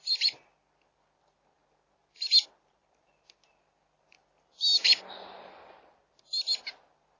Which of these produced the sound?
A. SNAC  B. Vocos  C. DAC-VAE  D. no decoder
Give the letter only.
D